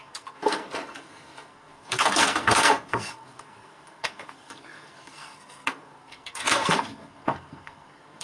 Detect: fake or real fake